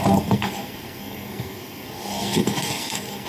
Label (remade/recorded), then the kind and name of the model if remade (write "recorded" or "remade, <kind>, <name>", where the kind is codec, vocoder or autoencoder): remade, codec, SNAC